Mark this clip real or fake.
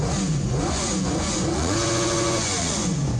fake